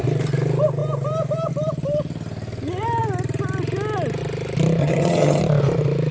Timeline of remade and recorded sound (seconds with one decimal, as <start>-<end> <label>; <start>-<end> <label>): 0.0-4.8 recorded; 4.8-5.4 remade; 5.4-6.1 recorded